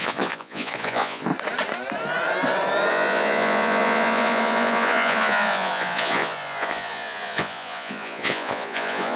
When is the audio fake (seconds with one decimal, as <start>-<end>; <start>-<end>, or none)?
0.0-1.3; 2.9-9.2